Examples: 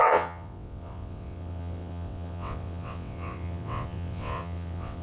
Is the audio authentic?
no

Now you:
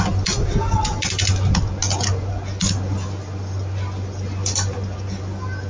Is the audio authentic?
yes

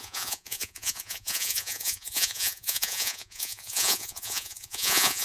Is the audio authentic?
no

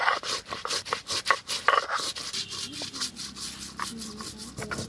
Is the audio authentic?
yes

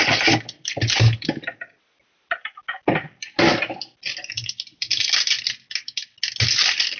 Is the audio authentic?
yes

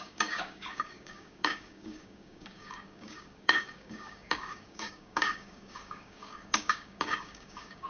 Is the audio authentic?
no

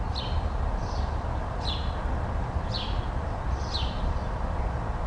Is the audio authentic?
yes